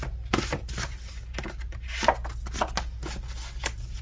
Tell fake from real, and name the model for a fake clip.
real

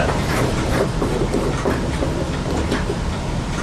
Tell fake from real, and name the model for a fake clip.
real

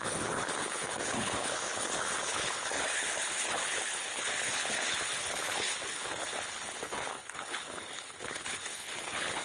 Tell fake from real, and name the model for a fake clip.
fake, codec, HILCodec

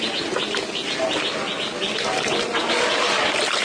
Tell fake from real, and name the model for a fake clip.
real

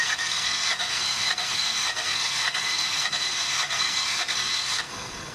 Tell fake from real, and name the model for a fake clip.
fake, codec, SNAC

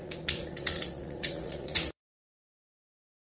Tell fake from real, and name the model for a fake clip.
fake, vocoder, Vocos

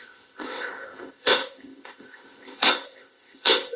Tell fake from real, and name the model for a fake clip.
fake, codec, ZipCodec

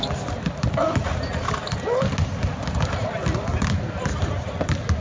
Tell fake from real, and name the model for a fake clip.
real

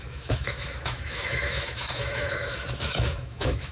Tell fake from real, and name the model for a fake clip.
fake, autoencoder, DAC-VAE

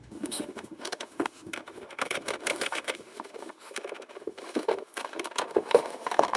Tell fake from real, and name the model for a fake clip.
fake, autoencoder, DAC-VAE